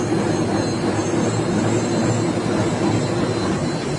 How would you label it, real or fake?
real